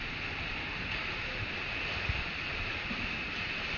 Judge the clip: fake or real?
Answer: fake